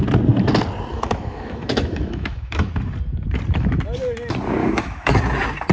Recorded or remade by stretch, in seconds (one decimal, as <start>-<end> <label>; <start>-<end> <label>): 0.0-0.9 recorded; 0.9-2.7 remade; 2.7-4.6 recorded; 4.6-5.2 remade; 5.2-5.7 recorded